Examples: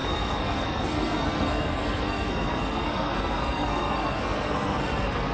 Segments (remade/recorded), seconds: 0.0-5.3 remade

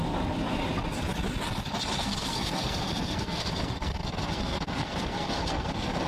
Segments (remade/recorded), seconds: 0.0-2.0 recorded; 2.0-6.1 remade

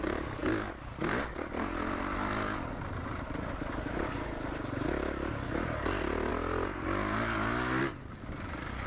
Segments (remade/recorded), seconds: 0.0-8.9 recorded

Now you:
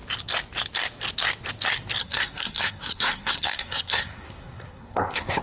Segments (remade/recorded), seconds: 0.0-2.0 recorded; 2.0-5.4 remade

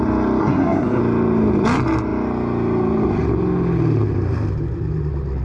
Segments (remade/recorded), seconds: 0.0-0.4 recorded; 0.4-1.0 remade; 1.0-5.4 recorded

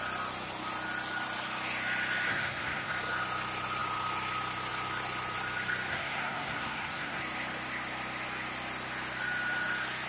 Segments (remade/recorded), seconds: 0.0-2.3 recorded; 2.3-2.9 remade; 2.9-5.9 recorded; 5.9-7.2 remade; 7.2-10.1 recorded

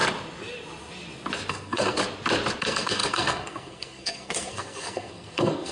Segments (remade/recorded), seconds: 0.0-1.5 recorded; 1.5-2.0 remade; 2.0-2.6 recorded; 2.6-5.7 remade